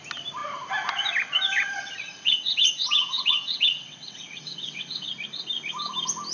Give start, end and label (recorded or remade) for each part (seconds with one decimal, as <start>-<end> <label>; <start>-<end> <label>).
0.0-1.5 recorded; 1.5-5.1 remade; 5.1-6.3 recorded